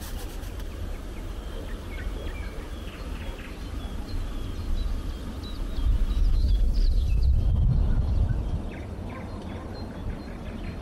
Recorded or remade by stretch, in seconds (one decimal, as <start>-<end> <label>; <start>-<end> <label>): 0.0-6.3 recorded; 6.3-8.2 remade; 8.2-10.8 recorded